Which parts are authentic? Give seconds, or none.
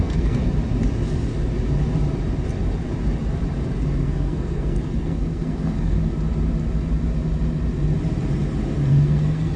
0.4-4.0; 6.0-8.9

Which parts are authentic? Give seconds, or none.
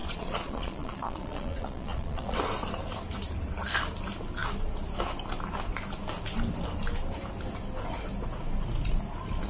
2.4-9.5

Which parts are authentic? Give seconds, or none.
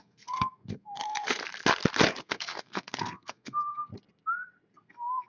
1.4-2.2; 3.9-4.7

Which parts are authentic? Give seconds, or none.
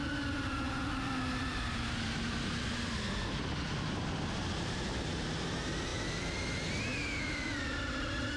0.0-8.4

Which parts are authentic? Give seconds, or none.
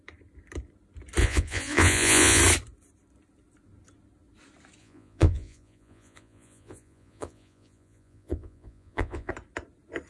0.0-1.2; 2.4-4.8; 9.3-10.1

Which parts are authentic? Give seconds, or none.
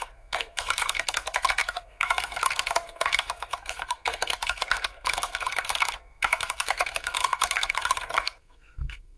none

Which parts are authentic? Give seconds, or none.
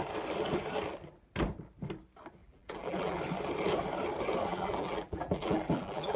0.0-2.4; 3.2-4.5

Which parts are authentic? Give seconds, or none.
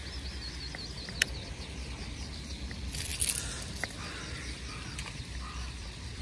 0.0-6.2